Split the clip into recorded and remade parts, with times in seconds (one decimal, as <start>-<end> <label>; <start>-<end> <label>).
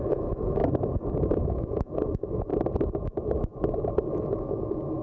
0.0-0.6 remade; 0.6-1.4 recorded; 1.4-2.5 remade; 2.5-4.2 recorded; 4.2-5.0 remade